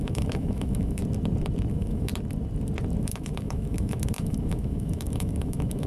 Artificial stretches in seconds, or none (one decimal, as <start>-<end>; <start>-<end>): 0.0-1.0; 1.7-2.1; 3.0-5.9